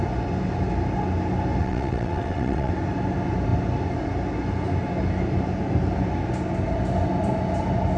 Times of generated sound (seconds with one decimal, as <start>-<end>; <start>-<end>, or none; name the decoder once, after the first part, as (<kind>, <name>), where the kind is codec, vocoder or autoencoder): 1.6-2.7 (vocoder, WaveNeXt)